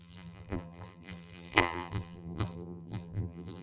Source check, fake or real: fake